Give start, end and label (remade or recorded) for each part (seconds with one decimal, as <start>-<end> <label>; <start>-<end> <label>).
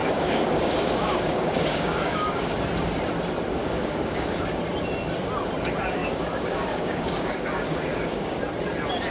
0.0-2.5 remade; 2.5-3.6 recorded; 3.6-4.6 remade; 4.6-6.0 recorded; 6.0-8.4 remade; 8.4-9.1 recorded